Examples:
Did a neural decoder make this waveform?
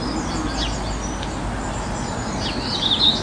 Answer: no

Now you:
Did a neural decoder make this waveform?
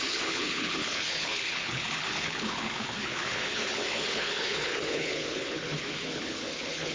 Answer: yes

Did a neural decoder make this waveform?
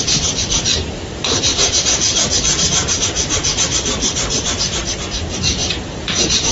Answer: yes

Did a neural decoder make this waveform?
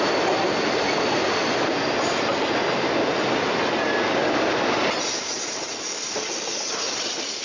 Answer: no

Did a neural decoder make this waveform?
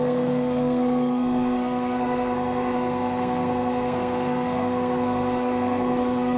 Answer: yes